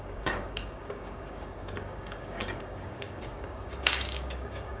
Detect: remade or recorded remade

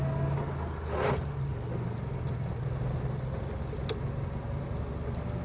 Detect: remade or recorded recorded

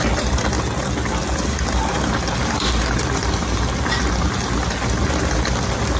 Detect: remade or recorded recorded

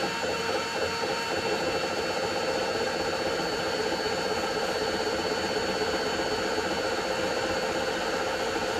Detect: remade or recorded recorded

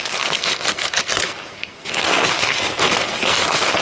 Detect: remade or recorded remade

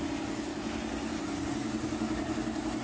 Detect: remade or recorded recorded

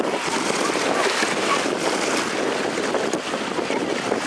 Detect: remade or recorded recorded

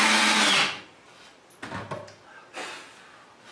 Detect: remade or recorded recorded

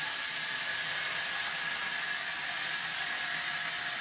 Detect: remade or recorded recorded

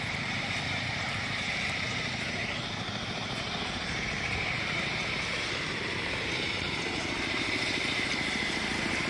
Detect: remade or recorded remade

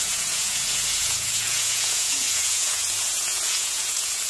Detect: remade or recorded remade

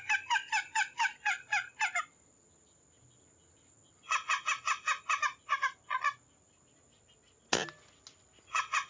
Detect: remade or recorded recorded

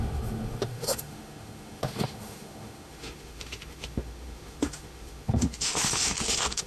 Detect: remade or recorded remade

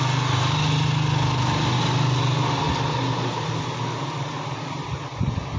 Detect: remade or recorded recorded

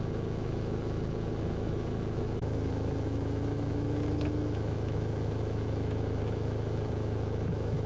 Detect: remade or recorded remade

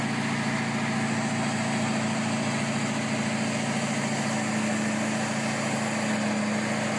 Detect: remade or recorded recorded